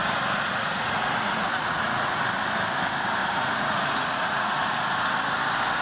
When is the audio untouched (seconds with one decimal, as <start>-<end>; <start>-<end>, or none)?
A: 2.2-3.2; 4.6-5.8

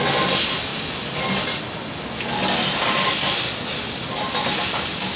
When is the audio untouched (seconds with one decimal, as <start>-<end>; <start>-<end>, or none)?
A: 0.0-5.2